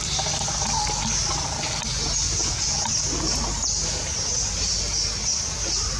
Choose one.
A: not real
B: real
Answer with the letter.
B